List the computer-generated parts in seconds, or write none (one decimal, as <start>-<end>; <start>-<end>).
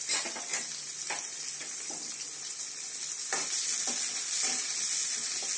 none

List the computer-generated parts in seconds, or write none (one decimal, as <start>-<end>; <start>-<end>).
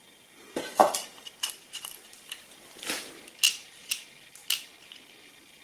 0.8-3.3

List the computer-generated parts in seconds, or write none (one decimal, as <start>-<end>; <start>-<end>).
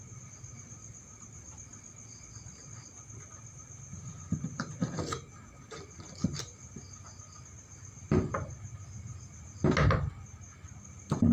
none